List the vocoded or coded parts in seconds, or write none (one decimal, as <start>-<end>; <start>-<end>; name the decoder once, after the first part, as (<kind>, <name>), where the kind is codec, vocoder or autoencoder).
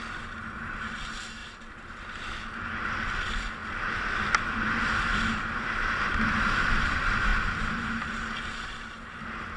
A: none